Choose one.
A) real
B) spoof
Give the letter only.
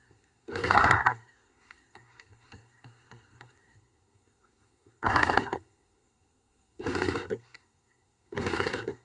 B